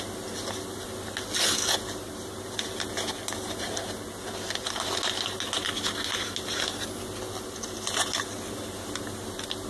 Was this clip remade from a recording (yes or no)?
no